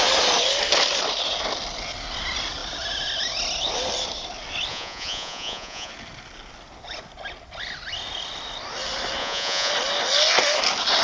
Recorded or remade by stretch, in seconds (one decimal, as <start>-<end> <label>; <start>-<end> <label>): 0.0-4.7 recorded; 4.7-5.9 remade; 5.9-9.2 recorded; 9.2-9.7 remade; 9.7-11.0 recorded